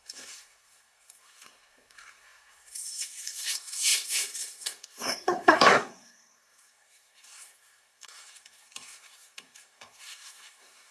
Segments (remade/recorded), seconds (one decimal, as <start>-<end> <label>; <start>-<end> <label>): 0.0-10.9 remade